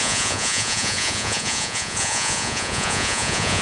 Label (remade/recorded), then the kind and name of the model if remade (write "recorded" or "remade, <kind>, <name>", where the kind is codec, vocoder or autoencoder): remade, vocoder, Vocos